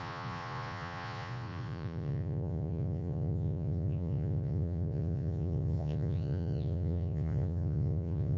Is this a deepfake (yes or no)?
yes